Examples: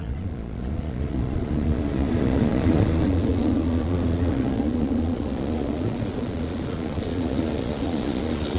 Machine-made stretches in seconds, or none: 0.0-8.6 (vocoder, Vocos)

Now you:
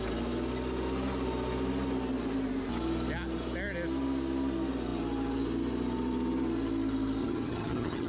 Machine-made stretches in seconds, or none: 7.2-8.1 (vocoder, HiFi-GAN)

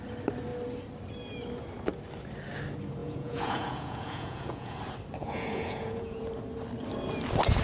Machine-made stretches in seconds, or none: 3.0-4.8 (vocoder, Vocos); 5.2-6.2